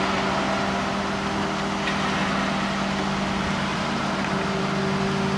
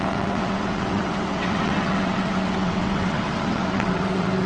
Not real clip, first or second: second